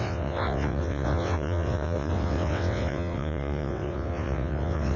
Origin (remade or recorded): remade